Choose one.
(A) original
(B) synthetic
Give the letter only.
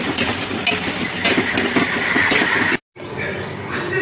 A